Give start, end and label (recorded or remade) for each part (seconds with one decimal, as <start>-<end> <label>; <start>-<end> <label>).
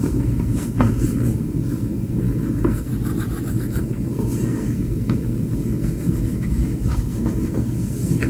0.0-2.9 remade; 2.9-3.5 recorded; 3.5-8.3 remade